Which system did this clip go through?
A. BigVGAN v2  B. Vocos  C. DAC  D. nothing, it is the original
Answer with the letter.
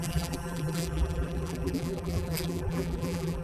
A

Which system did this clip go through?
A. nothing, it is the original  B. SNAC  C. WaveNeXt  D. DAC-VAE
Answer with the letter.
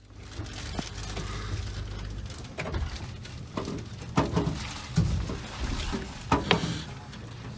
A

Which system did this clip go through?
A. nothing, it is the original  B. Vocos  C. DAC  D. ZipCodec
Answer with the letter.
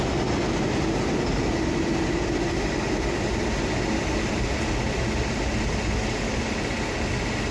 A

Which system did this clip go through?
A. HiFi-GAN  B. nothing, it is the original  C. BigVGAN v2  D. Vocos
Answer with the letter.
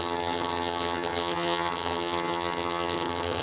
A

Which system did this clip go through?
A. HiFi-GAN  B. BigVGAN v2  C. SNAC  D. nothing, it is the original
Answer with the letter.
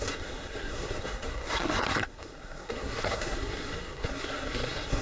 C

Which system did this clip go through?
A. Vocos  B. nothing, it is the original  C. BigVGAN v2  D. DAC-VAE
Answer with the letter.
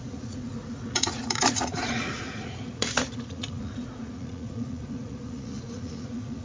A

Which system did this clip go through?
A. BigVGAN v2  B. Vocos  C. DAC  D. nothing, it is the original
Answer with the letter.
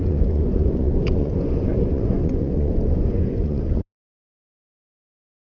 B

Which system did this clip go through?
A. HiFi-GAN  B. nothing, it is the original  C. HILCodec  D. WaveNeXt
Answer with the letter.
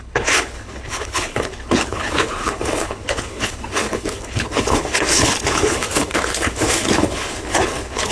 C